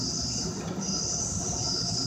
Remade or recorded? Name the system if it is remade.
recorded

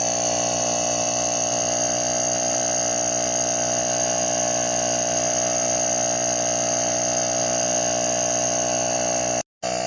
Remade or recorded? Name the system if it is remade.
recorded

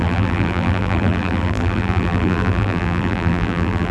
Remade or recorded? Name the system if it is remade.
remade, vocoder, BigVGAN v2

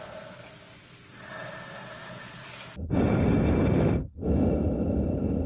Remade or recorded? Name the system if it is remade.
recorded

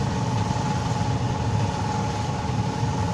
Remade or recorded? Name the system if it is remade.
recorded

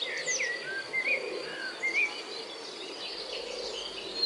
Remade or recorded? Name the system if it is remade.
recorded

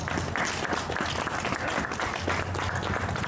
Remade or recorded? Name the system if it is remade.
recorded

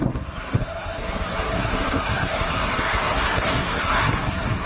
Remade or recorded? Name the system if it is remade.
remade, codec, SNAC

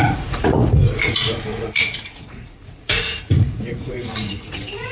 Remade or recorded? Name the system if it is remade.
remade, vocoder, Vocos